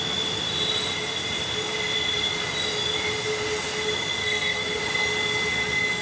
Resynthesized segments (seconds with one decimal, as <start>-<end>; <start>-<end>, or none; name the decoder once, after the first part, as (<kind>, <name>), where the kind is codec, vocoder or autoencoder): 4.2-4.8 (codec, SNAC)